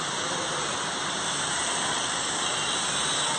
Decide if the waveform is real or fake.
real